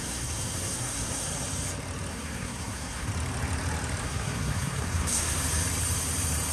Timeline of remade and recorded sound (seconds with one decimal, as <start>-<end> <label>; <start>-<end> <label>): 0.0-1.3 remade; 1.3-2.1 recorded; 2.1-3.1 remade; 3.1-4.0 recorded; 4.0-5.4 remade; 5.4-6.5 recorded